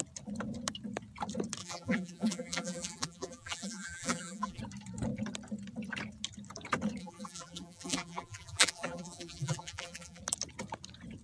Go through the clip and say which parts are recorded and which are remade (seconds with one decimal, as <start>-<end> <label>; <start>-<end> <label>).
0.0-1.6 recorded; 1.6-4.6 remade; 4.6-7.0 recorded; 7.0-10.2 remade; 10.2-11.2 recorded